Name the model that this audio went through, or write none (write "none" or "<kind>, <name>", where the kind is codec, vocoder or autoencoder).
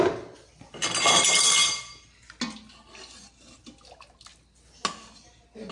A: none